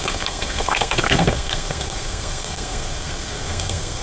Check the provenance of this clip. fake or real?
fake